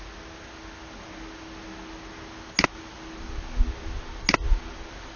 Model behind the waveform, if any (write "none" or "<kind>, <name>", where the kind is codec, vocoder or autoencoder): none